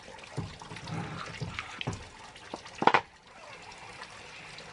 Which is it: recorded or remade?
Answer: recorded